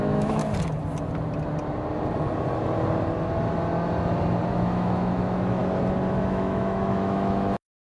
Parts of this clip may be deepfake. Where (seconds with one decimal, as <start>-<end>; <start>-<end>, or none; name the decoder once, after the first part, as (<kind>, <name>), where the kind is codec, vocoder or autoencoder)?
0.0-0.4 (autoencoder, DAC-VAE); 4.5-5.6; 6.1-8.0